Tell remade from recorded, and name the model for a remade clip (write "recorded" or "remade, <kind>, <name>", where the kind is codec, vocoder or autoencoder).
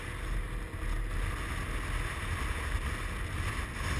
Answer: recorded